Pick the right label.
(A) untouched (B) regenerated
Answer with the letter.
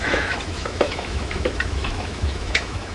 B